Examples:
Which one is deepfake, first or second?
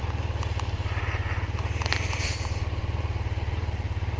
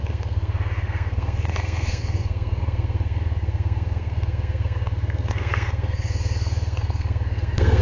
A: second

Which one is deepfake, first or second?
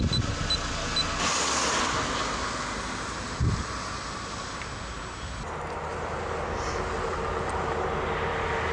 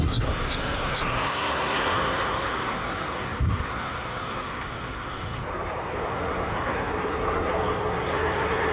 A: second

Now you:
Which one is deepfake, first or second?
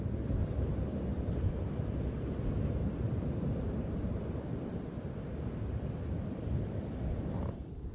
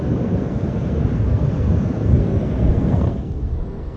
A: second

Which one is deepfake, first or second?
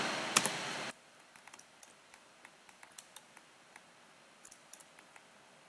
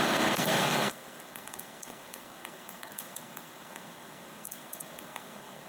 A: second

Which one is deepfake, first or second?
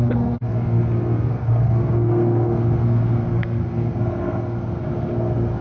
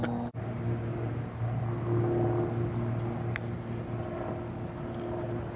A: first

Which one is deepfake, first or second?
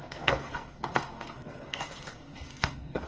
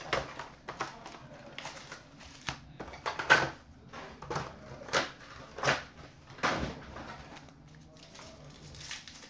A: first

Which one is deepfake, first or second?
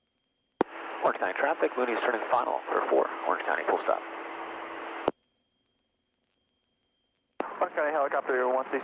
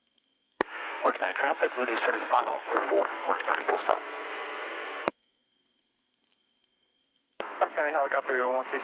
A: second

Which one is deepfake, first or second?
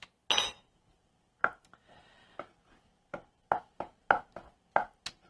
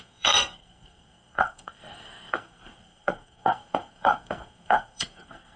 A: second